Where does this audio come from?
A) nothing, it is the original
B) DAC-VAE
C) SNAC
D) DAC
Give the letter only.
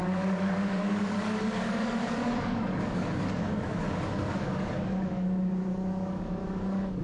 D